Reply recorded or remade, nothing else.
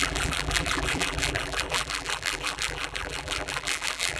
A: remade